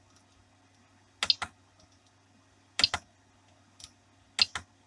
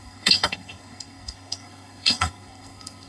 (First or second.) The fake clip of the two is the second